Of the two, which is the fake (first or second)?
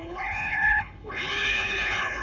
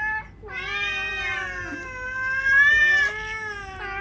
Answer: first